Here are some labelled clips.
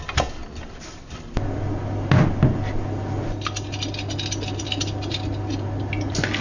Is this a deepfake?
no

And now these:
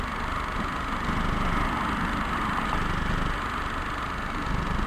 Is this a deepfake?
no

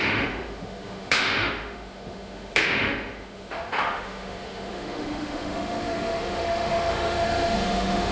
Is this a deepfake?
yes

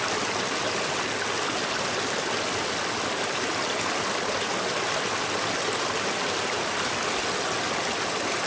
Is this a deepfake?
no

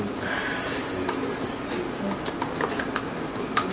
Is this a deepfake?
no